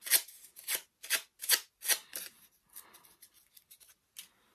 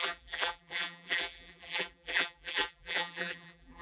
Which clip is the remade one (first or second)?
second